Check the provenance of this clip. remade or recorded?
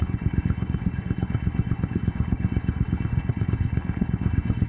remade